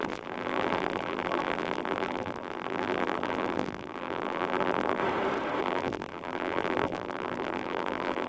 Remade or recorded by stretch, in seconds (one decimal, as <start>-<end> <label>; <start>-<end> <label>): 0.0-5.0 remade; 5.0-5.6 recorded; 5.6-8.3 remade